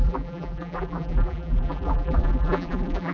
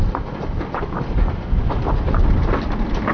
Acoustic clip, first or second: second